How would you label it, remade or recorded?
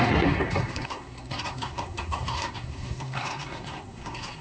remade